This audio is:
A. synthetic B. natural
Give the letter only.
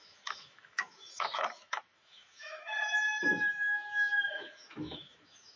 A